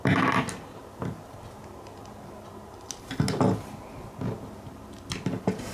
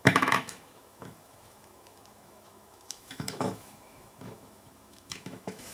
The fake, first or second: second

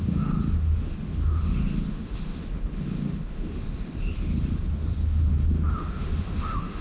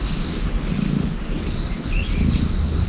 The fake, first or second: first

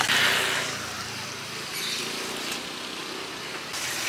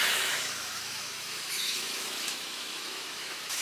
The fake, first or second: second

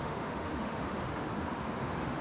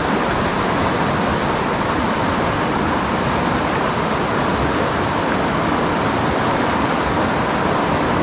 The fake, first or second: first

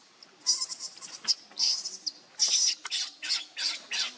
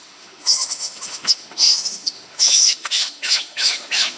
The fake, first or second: second